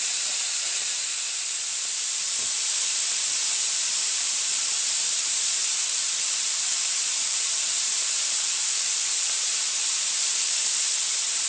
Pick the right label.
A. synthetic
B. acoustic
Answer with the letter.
A